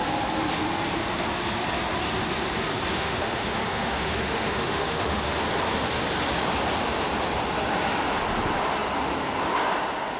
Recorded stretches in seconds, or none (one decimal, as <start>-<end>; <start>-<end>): 0.0-2.9; 5.4-10.2